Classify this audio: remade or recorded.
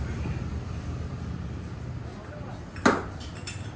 recorded